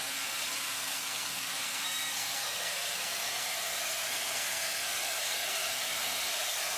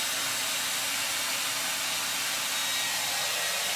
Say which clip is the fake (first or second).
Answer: first